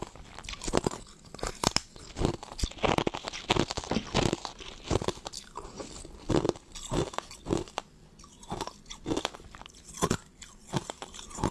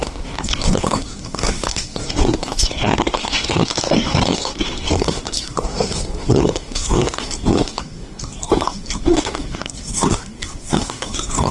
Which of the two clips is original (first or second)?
first